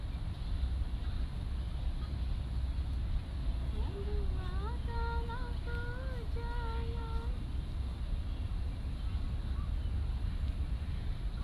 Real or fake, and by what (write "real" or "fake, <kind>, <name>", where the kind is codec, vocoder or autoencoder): real